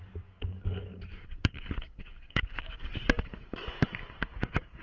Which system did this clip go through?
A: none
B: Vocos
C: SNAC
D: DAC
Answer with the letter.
D